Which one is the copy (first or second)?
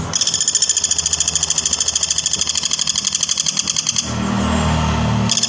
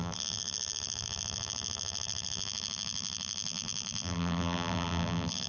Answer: second